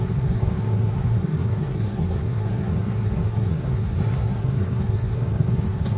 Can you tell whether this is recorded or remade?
remade